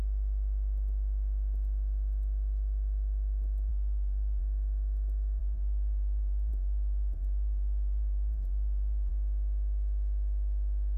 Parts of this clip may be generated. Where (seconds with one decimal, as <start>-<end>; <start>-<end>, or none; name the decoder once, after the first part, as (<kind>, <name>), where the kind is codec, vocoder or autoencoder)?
3.7-4.4 (vocoder, BigVGAN v2); 5.4-9.1